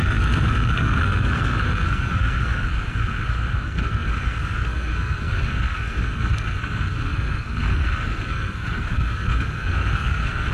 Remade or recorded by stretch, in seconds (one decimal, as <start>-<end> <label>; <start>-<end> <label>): 0.0-10.5 remade